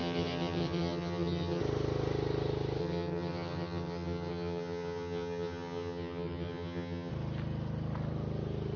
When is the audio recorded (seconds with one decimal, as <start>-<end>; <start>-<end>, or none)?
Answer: 1.6-2.8; 7.1-8.8